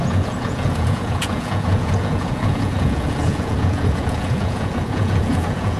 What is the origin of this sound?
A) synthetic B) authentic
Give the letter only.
A